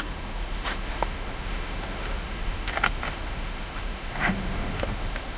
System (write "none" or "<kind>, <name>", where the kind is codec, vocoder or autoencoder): autoencoder, DAC-VAE